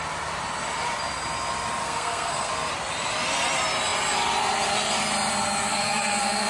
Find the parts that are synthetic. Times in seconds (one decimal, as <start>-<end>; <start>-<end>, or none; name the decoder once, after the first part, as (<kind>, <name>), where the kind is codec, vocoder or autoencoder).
1.8-2.5 (codec, SNAC); 5.7-6.5

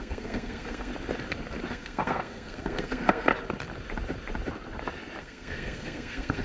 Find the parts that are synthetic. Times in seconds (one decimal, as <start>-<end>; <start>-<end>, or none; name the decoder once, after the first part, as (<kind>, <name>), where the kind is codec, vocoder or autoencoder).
0.0-0.9 (codec, SNAC); 1.7-3.3; 5.2-6.4

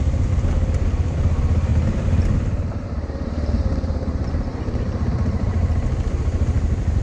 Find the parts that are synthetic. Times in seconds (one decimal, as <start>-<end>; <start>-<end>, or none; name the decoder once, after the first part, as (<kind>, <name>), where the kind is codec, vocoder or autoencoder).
1.7-5.1 (vocoder, BigVGAN v2)